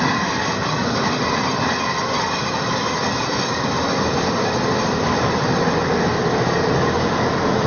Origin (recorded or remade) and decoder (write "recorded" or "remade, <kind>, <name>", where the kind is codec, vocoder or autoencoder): recorded